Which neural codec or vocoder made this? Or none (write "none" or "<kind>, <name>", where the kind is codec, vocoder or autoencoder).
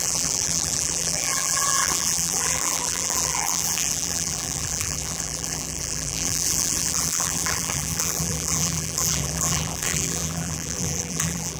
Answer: vocoder, BigVGAN v2